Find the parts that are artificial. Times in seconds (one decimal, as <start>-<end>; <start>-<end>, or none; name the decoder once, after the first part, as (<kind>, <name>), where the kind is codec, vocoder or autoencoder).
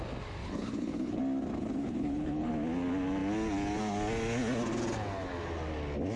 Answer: 0.4-1.2 (codec, HILCodec); 1.6-2.5